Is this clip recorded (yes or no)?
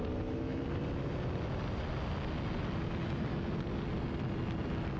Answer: yes